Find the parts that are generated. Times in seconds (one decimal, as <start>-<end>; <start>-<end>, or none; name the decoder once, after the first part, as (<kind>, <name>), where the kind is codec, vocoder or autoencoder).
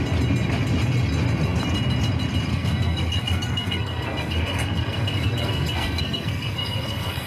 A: 2.5-7.3 (codec, SNAC)